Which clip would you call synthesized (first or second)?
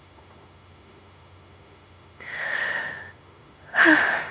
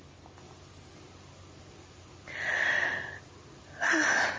first